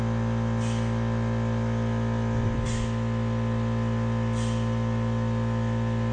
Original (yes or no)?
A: yes